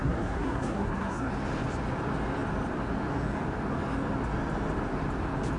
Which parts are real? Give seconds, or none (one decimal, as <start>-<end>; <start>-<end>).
1.3-5.6

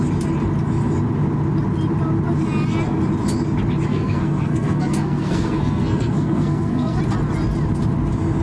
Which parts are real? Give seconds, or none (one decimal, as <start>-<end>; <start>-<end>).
0.0-3.9; 7.0-8.4

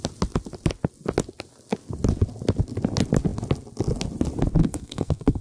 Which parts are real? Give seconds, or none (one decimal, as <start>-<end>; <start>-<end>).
0.0-4.6

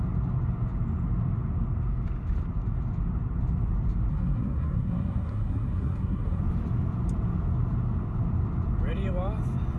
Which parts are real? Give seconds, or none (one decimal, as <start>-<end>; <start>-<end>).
0.0-4.1; 6.4-9.8

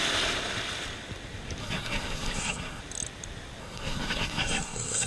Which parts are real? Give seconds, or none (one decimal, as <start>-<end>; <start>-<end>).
0.0-1.6; 2.8-3.6